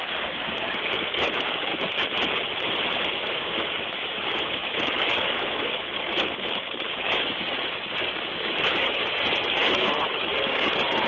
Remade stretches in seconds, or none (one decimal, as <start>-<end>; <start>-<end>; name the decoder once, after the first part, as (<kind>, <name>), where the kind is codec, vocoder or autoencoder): 0.0-1.7 (codec, DAC); 3.1-11.1

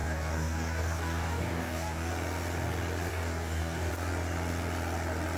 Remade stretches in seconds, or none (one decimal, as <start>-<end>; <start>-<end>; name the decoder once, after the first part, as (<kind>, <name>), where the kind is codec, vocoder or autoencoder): 0.0-2.1 (codec, DAC); 3.1-3.9